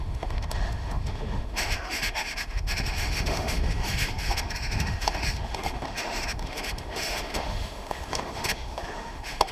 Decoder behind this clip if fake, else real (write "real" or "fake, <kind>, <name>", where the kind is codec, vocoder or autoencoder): fake, autoencoder, DAC-VAE